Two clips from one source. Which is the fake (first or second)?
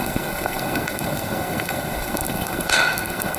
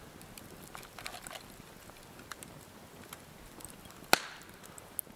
first